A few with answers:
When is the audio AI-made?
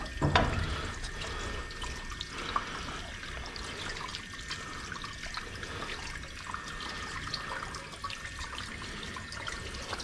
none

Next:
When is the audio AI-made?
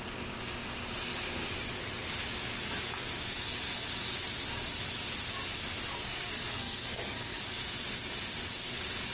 5.9-7.4 (codec, SNAC)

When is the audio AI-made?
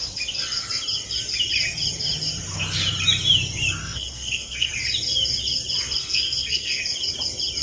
3.8-4.7 (codec, SNAC); 6.0-6.8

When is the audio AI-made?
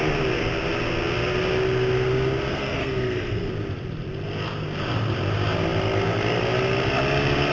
2.5-3.5 (codec, SNAC)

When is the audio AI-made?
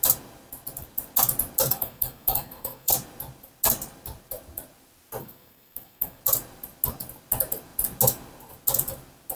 1.8-2.9 (codec, SNAC); 5.2-6.2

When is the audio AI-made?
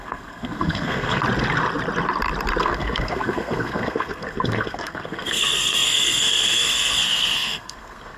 0.0-1.2 (codec, SNAC); 2.6-8.2